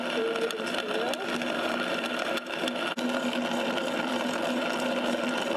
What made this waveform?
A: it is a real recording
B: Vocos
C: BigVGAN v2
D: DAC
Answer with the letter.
A